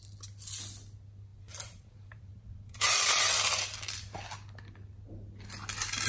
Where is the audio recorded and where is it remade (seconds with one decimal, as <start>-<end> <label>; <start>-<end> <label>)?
0.0-1.3 recorded; 1.3-3.4 remade; 3.4-6.1 recorded